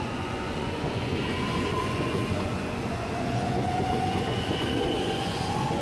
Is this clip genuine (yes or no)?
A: no